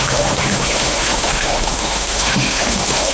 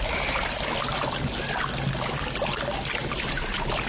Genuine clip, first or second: second